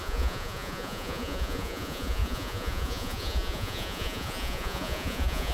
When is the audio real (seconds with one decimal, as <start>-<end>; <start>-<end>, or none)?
none